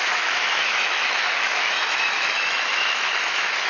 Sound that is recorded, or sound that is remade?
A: remade